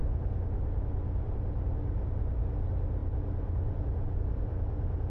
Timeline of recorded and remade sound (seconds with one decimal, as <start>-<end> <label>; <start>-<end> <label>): 0.0-5.1 recorded